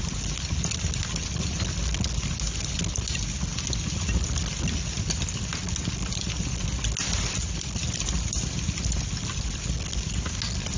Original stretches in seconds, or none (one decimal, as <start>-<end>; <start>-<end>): 0.0-10.8